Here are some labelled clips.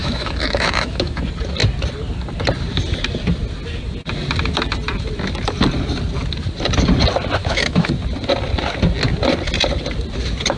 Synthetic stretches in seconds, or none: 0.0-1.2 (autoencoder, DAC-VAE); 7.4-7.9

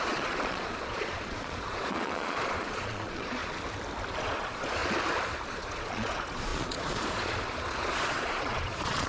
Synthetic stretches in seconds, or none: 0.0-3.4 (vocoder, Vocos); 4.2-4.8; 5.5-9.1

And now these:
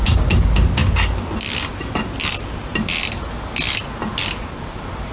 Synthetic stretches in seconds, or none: none

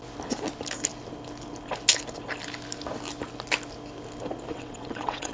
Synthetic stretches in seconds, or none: 4.5-5.3 (vocoder, WaveNeXt)

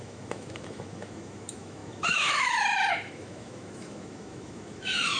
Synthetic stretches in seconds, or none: 0.0-5.2 (autoencoder, DAC-VAE)

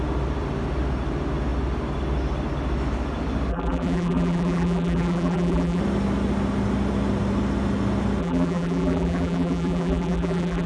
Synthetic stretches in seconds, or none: 3.5-5.8 (vocoder, BigVGAN v2); 8.2-10.7